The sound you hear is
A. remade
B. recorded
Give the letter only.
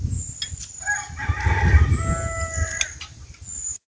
B